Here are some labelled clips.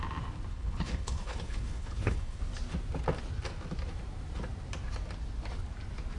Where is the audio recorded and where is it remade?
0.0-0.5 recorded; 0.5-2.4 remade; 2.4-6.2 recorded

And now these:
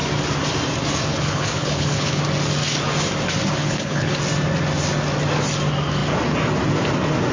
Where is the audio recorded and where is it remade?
0.0-1.1 recorded; 1.1-2.2 remade; 2.2-3.6 recorded; 3.6-4.2 remade; 4.2-7.3 recorded

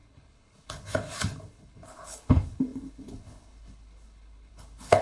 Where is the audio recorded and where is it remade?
0.0-5.0 remade

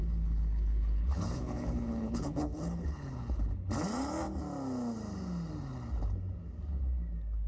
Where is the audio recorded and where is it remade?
0.0-3.7 remade; 3.7-7.5 recorded

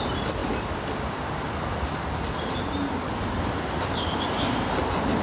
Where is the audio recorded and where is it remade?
0.0-5.2 recorded

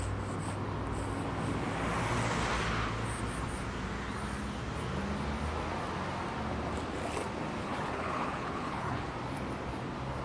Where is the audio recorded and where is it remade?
0.0-7.6 recorded; 7.6-9.1 remade; 9.1-10.2 recorded